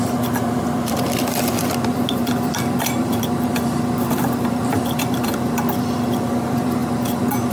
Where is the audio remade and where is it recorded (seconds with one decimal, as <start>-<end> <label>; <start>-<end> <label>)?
0.0-6.8 remade; 6.8-7.5 recorded